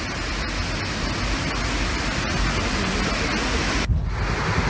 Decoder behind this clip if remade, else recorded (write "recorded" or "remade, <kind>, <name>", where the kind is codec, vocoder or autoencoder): recorded